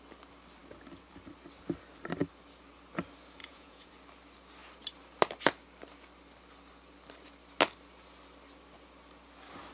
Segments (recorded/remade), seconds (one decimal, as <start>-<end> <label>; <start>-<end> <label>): 0.0-3.4 recorded; 3.4-3.9 remade; 3.9-9.7 recorded